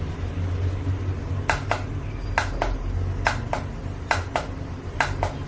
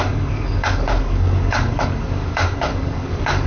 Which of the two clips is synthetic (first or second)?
second